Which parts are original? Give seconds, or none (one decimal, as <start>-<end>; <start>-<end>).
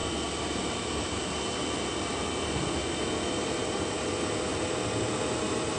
0.0-5.8